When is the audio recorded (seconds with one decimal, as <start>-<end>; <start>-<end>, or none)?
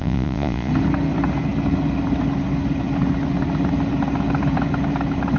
0.7-5.4